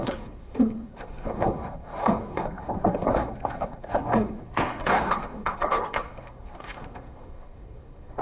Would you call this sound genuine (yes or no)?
no